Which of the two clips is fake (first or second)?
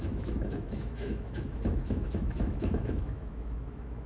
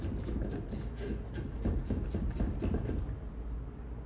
first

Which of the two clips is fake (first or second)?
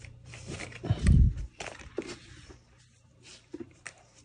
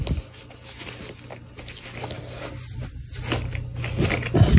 first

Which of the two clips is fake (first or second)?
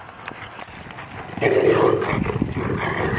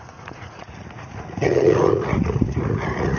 second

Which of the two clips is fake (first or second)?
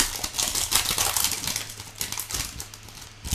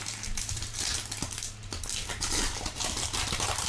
second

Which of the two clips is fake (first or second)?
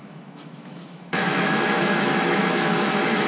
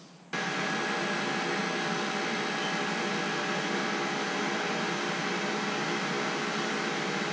first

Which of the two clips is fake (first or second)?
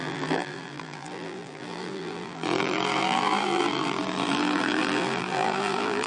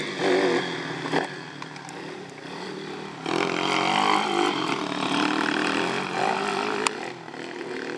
first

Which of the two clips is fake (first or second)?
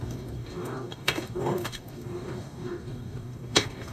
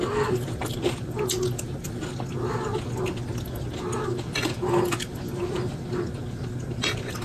first